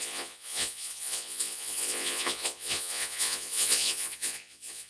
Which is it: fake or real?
fake